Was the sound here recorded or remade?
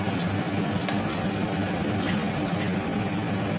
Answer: recorded